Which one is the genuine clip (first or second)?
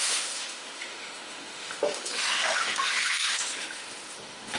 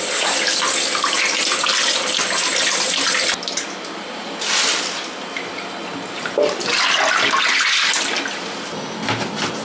second